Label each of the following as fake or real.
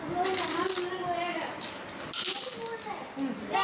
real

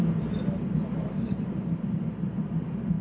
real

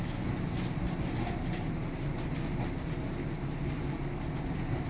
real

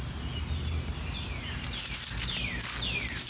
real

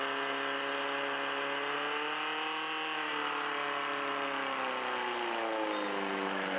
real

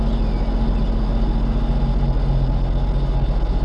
real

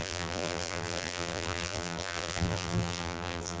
fake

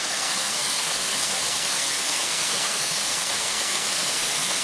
fake